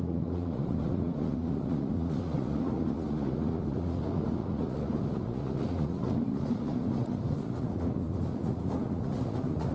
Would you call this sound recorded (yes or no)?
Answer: no